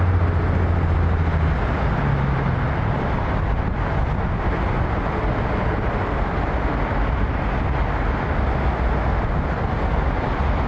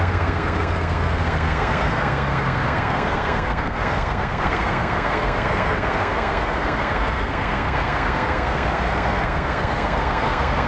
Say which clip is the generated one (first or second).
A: second